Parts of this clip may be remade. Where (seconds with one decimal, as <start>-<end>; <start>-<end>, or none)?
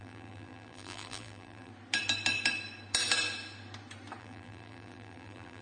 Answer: 0.0-1.7; 4.2-5.6